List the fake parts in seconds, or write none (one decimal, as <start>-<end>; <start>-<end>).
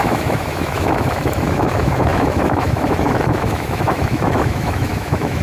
0.0-5.4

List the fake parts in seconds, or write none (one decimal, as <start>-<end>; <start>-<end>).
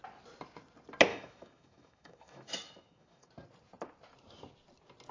1.1-3.3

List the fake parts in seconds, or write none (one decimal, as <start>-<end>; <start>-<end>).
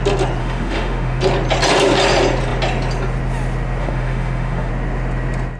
0.4-1.2; 3.8-4.7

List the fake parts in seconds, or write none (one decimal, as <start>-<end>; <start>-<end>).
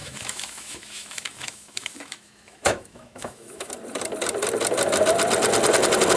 0.0-3.7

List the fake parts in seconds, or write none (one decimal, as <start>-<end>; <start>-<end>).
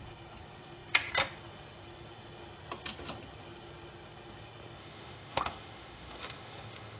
4.8-7.0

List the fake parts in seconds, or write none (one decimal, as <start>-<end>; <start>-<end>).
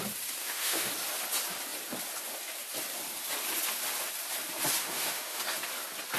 0.4-0.9; 4.8-5.4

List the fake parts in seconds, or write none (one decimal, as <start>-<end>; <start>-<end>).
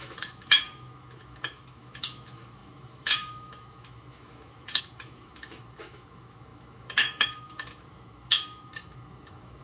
0.0-9.6